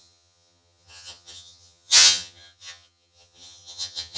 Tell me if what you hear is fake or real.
fake